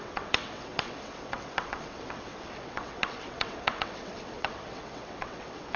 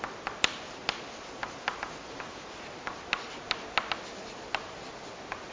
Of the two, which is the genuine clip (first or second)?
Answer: second